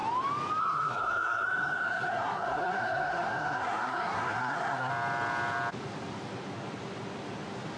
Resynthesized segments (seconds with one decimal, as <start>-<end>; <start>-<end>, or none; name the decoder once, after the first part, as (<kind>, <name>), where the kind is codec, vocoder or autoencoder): 0.6-4.9 (codec, SNAC)